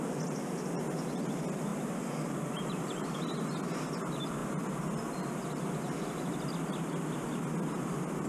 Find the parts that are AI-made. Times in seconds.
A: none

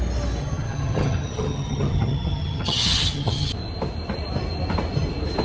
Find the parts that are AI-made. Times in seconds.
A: 0.4-3.5 (vocoder, HiFi-GAN)

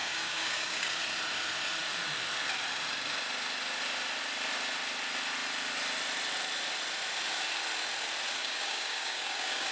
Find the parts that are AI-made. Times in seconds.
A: 0.0-1.0 (codec, DAC); 8.4-9.7

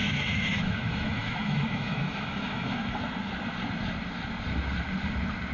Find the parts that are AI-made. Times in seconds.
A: 0.0-3.0 (autoencoder, DAC-VAE)

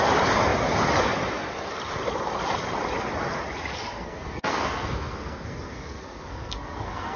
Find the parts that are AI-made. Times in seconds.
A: 3.8-7.2 (codec, SNAC)